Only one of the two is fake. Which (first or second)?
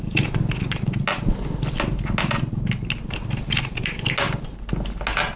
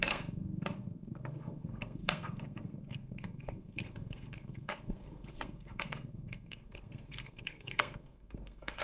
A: second